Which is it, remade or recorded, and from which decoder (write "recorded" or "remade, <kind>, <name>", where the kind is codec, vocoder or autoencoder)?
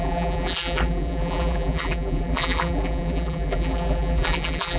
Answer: remade, vocoder, BigVGAN v2